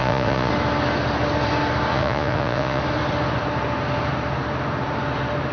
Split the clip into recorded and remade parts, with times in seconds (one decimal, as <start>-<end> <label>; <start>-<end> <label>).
0.0-0.5 remade; 0.5-1.9 recorded; 1.9-2.8 remade; 2.8-5.5 recorded